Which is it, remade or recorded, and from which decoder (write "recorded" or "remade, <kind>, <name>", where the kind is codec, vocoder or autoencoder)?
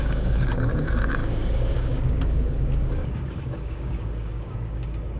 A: remade, codec, DAC